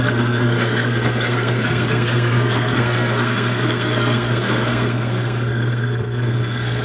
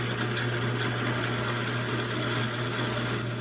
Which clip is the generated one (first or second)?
first